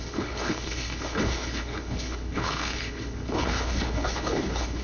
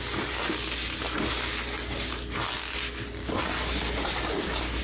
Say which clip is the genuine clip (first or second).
second